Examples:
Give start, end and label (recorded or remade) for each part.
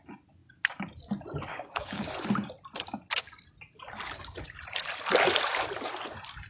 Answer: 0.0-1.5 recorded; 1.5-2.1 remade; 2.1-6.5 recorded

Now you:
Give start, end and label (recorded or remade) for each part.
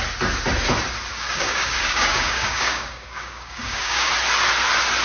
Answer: 0.0-1.1 recorded; 1.1-4.1 remade; 4.1-5.0 recorded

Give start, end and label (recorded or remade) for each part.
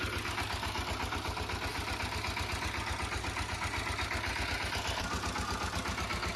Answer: 0.0-6.4 recorded